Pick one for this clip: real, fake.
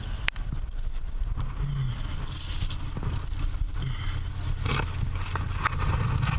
real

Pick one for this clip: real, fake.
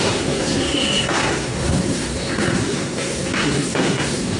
fake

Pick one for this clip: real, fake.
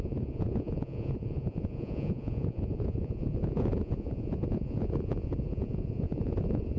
fake